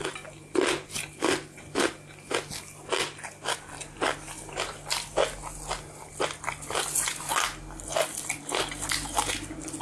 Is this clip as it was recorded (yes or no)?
yes